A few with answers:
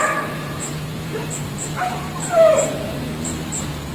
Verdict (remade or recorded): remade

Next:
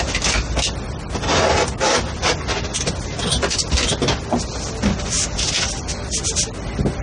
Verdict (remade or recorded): recorded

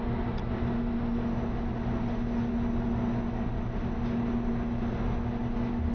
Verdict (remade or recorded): recorded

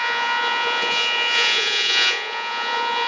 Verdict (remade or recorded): remade